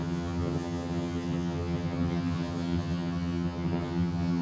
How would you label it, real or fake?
fake